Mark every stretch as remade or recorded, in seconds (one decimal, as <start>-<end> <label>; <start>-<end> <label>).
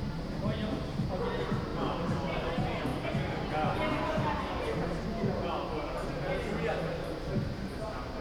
0.0-1.7 recorded; 1.7-2.5 remade; 2.5-2.9 recorded; 2.9-3.5 remade; 3.5-8.2 recorded